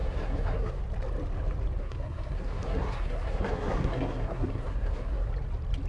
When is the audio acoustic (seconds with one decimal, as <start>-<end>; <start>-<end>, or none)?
0.8-1.8; 5.3-5.9

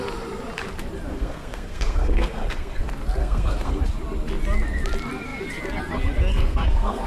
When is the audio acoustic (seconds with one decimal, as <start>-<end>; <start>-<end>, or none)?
0.0-1.1; 2.8-3.2; 3.8-6.3

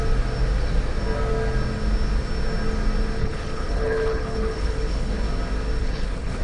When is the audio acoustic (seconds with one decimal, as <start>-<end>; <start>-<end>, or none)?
0.0-3.2; 5.1-5.8

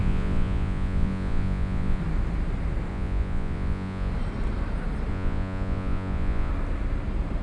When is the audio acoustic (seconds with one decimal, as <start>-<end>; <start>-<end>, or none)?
2.0-2.9; 4.1-5.1; 6.5-7.4

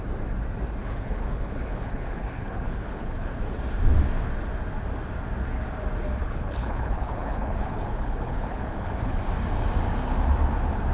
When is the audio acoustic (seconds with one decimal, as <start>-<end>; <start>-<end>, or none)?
0.0-0.8; 3.3-6.2; 9.2-10.9

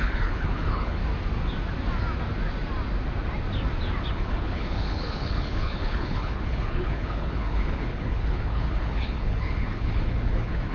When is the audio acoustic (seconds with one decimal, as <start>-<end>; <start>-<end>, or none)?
1.0-4.1

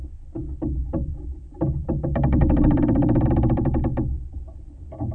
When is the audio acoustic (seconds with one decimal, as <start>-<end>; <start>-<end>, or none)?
0.0-0.8; 3.9-5.1

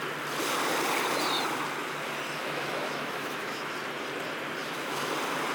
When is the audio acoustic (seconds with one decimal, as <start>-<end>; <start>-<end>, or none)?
0.0-2.4; 3.7-4.6; 5.1-5.5